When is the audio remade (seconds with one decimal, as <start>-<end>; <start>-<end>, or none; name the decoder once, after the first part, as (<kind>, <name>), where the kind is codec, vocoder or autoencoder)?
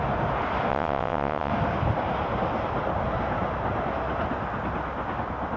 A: 0.7-1.5 (vocoder, WaveNeXt)